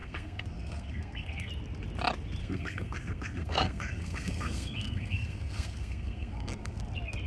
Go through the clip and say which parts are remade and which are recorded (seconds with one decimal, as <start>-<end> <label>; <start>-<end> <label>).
0.0-1.5 remade; 1.5-2.4 recorded; 2.4-6.8 remade; 6.8-7.3 recorded